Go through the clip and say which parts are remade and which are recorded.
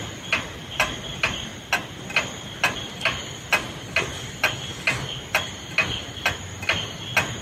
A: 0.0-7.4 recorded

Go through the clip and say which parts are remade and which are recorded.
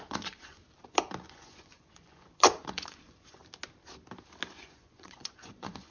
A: 0.0-0.6 remade; 0.6-1.3 recorded; 1.3-3.4 remade; 3.4-4.5 recorded; 4.5-5.9 remade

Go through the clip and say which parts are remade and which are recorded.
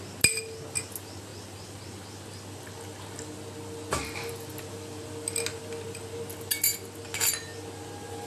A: 0.0-8.3 recorded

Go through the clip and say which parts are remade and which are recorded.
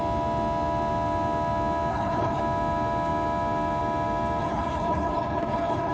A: 0.0-1.9 recorded; 1.9-2.4 remade; 2.4-4.4 recorded; 4.4-5.9 remade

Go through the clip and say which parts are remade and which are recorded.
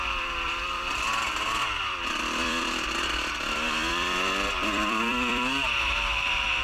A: 0.0-6.6 remade